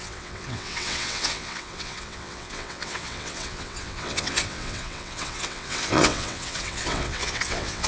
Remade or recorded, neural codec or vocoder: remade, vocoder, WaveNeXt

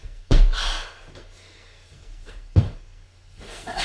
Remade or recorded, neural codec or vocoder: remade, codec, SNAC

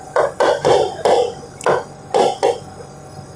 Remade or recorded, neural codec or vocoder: remade, vocoder, BigVGAN v2